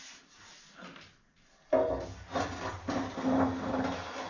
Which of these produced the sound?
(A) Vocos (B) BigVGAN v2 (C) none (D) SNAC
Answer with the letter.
C